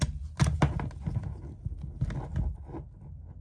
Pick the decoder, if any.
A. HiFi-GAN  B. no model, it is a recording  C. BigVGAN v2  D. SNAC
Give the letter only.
B